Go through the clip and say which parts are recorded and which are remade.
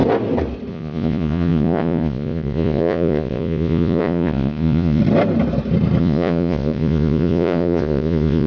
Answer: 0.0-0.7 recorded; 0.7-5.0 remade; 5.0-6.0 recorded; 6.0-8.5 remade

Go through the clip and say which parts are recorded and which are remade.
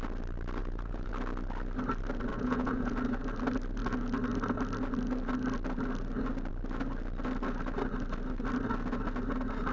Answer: 0.0-0.6 recorded; 0.6-1.1 remade; 1.1-2.3 recorded; 2.3-2.9 remade; 2.9-9.7 recorded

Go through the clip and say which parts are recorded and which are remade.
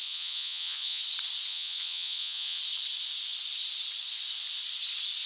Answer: 0.0-1.0 remade; 1.0-1.5 recorded; 1.5-2.6 remade; 2.6-5.3 recorded